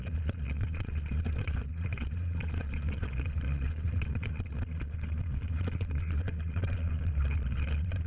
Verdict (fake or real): fake